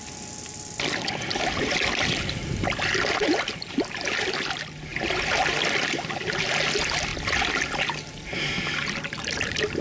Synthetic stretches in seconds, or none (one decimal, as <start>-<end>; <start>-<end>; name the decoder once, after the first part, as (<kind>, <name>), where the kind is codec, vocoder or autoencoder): none